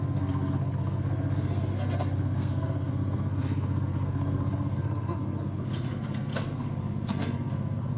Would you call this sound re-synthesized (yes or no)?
yes